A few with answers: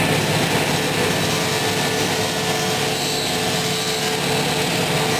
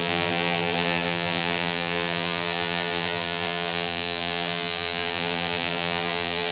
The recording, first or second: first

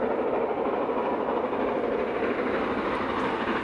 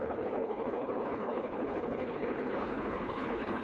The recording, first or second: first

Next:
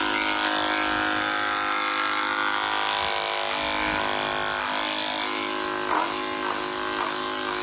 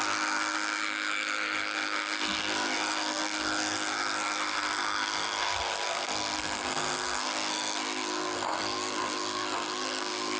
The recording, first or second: first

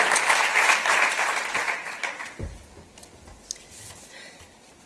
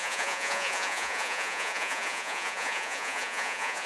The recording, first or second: first